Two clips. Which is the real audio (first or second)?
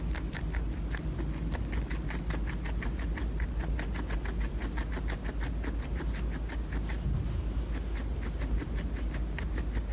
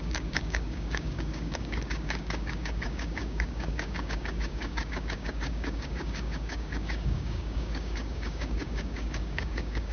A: first